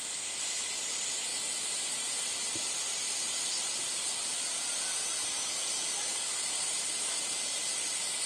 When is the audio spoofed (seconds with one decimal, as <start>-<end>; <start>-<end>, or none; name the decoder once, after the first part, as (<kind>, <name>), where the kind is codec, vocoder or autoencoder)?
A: none